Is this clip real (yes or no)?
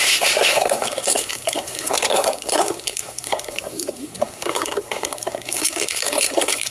no